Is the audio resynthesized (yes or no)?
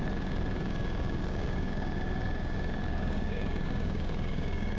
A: yes